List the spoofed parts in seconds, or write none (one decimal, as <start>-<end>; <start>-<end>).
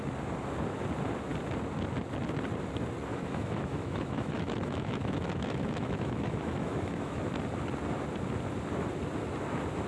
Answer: 3.1-7.2